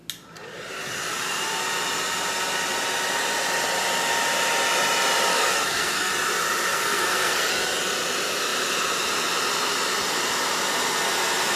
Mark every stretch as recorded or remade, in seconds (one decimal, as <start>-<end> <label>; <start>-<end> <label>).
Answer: 0.0-5.3 recorded; 5.3-6.1 remade; 6.1-6.7 recorded; 6.7-7.5 remade; 7.5-11.6 recorded